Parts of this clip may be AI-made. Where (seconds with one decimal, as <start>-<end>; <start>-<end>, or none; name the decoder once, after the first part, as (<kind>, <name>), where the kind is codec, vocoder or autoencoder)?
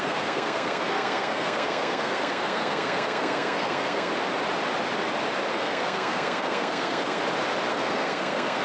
0.0-4.1 (codec, SNAC); 5.5-7.2; 7.7-8.6